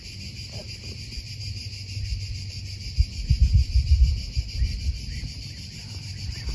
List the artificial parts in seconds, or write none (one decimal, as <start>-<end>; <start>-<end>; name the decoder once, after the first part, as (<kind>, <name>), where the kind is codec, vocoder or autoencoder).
none